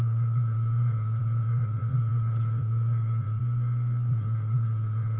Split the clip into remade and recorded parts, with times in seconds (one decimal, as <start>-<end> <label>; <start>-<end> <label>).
0.0-3.4 remade; 3.4-4.1 recorded; 4.1-5.2 remade